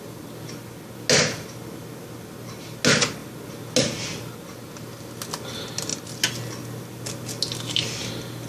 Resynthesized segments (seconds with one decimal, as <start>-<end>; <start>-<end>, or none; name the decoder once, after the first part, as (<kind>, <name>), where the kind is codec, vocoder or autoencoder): none